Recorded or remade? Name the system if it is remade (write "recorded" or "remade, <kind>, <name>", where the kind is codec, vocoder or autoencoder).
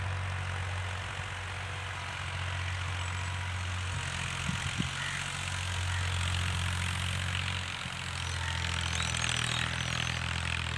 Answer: recorded